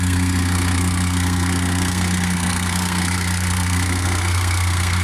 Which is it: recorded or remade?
remade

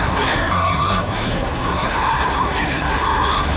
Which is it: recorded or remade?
remade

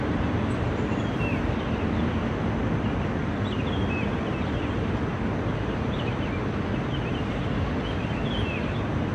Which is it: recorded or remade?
recorded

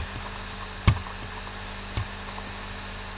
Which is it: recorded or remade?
recorded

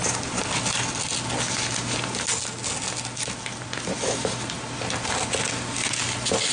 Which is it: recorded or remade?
recorded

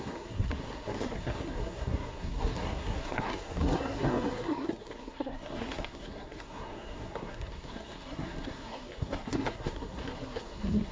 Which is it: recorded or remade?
remade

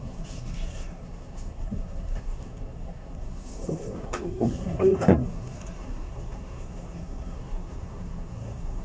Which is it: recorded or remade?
remade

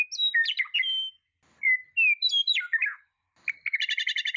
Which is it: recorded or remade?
recorded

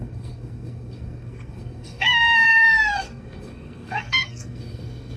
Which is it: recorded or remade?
remade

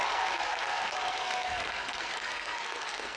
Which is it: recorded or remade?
remade